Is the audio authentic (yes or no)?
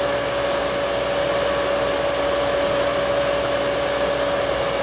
yes